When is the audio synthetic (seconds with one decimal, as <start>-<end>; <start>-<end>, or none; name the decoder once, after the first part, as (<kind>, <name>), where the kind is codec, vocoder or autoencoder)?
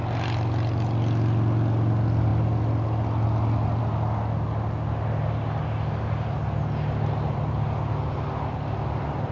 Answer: none